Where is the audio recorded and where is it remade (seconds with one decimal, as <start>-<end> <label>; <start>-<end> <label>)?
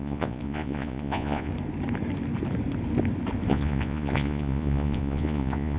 0.0-1.5 remade; 1.5-3.5 recorded; 3.5-5.8 remade